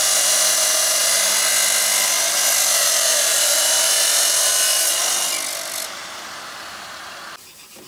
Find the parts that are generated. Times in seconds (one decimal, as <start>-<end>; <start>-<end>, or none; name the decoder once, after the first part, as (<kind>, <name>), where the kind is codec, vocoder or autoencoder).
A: none